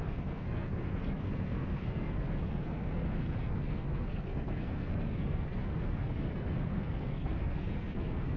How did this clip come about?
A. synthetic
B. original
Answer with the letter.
A